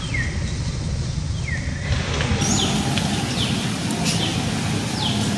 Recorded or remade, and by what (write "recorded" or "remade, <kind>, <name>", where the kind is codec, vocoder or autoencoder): recorded